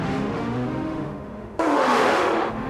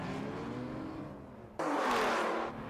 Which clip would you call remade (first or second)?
first